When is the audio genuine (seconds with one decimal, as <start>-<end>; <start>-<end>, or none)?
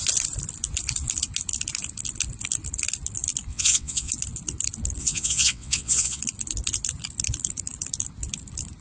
0.0-3.5; 4.1-5.0; 6.2-8.8